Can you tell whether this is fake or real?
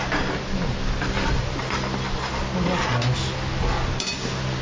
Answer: real